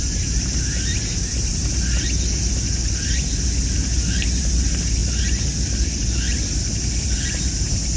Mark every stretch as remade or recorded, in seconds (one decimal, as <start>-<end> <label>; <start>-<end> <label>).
0.0-8.0 recorded

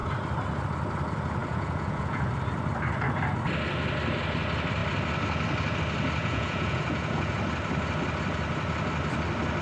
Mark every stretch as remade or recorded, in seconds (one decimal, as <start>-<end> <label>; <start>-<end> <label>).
0.0-1.4 recorded; 1.4-2.2 remade; 2.2-6.2 recorded; 6.2-7.3 remade; 7.3-9.6 recorded